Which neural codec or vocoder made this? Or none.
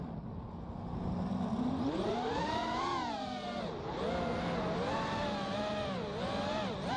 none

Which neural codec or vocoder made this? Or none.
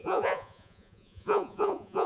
vocoder, Vocos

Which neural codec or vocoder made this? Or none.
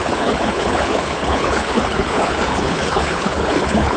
codec, HILCodec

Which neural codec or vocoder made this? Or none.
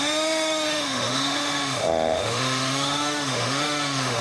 autoencoder, DAC-VAE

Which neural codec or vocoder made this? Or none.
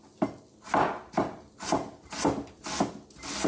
none